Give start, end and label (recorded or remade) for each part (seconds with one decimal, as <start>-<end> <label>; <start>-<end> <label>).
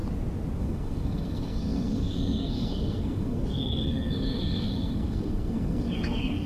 0.0-0.6 recorded; 0.6-6.5 remade